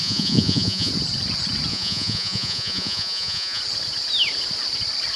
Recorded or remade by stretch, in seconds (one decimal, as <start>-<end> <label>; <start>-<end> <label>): 0.0-0.9 remade; 0.9-1.7 recorded; 1.7-3.6 remade; 3.6-5.2 recorded